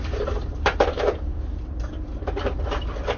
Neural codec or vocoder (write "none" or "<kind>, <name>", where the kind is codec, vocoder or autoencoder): vocoder, BigVGAN v2